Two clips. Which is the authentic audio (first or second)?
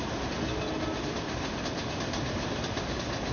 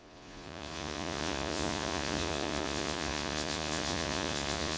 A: first